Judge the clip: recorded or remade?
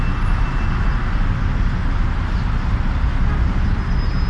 recorded